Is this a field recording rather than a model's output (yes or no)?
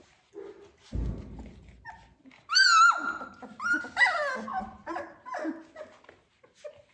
yes